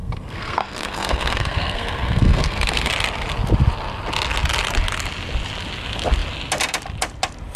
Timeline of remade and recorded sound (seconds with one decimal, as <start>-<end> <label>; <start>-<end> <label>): 0.0-2.9 remade; 2.9-7.6 recorded